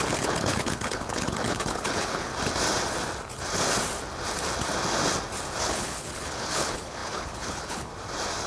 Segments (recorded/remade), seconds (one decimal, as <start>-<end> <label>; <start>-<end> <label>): 0.0-2.3 remade; 2.3-5.6 recorded; 5.6-7.9 remade; 7.9-8.5 recorded